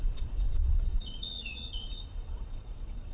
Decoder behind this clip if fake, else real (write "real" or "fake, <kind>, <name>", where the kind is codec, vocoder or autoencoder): fake, vocoder, WaveNeXt